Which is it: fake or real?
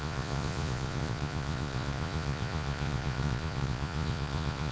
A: fake